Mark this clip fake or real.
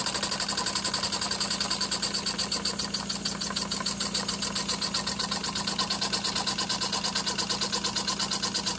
real